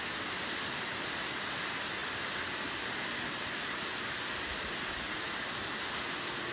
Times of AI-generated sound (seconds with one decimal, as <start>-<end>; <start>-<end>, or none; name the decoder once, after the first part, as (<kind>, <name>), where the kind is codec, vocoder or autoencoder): none